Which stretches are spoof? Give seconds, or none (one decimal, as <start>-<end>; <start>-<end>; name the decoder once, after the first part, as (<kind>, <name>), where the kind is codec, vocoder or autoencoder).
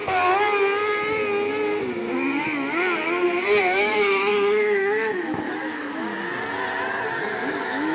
3.6-6.1 (autoencoder, DAC-VAE); 7.3-7.9